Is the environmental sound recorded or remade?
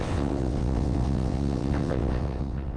remade